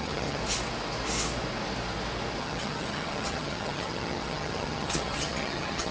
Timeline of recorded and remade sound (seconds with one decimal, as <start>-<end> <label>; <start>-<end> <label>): 0.0-0.4 remade; 0.4-2.4 recorded; 2.4-5.9 remade